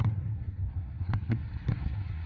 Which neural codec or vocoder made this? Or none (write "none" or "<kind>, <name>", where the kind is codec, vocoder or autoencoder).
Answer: codec, SNAC